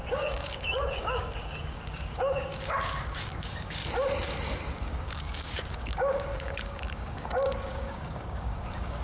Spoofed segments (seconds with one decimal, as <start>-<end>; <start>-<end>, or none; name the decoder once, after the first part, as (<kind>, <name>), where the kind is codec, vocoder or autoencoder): 0.0-3.8 (codec, DAC); 4.7-9.0